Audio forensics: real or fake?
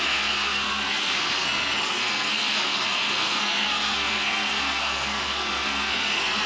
fake